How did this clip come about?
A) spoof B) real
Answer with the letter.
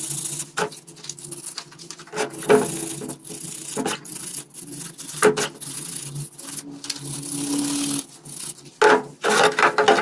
B